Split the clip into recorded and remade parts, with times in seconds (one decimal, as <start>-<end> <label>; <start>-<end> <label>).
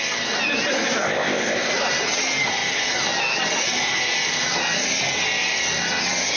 0.0-1.0 recorded; 1.0-1.7 remade; 1.7-6.4 recorded